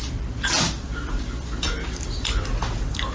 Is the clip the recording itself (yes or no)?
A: no